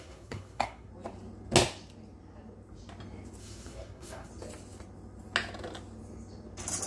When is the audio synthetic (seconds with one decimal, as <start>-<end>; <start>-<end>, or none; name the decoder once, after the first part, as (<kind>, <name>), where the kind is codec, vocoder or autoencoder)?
0.0-0.9 (codec, SNAC); 3.4-4.3

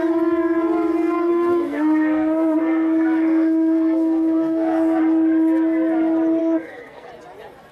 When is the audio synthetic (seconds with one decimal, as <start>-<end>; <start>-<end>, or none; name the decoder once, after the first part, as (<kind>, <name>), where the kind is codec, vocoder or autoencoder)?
1.3-5.0 (codec, SNAC); 6.4-7.1

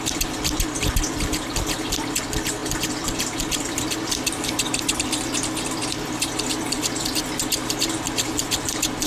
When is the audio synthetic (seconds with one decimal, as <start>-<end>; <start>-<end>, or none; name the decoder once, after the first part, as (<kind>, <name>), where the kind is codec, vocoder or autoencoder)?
none

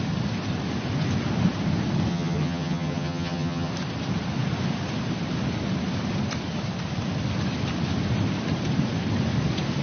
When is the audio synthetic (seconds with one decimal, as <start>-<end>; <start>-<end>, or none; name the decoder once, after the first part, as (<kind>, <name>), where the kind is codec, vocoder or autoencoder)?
2.1-3.7 (vocoder, HiFi-GAN)